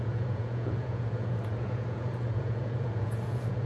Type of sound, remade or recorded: remade